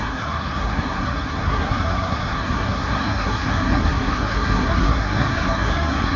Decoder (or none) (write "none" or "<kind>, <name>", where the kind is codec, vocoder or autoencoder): codec, SNAC